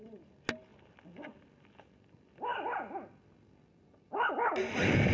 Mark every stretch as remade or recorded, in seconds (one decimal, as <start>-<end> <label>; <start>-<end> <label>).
0.0-5.1 recorded